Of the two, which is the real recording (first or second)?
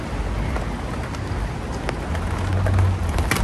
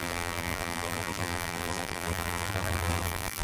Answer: first